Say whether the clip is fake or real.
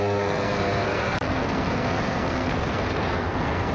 fake